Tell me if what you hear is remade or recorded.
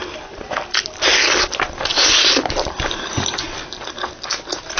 recorded